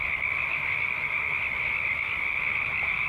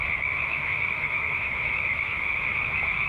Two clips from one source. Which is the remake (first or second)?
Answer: second